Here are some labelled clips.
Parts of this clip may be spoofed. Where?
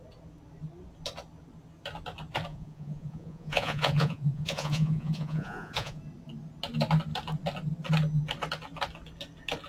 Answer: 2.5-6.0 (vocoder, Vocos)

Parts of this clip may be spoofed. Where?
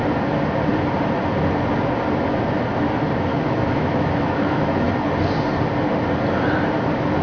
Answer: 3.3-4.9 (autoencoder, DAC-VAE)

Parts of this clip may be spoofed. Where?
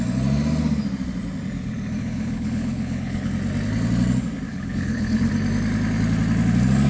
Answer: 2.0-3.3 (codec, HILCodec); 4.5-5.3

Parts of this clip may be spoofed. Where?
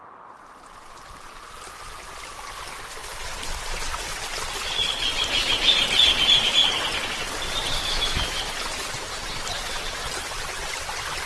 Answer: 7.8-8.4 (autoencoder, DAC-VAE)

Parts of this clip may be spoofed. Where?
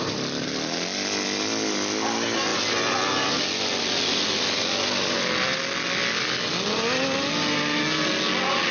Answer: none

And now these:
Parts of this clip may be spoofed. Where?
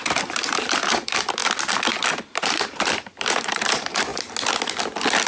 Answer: 0.0-1.4 (vocoder, BigVGAN v2); 2.3-4.1